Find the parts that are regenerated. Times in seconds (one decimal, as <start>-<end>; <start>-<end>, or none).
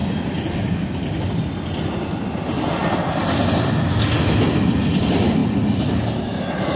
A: none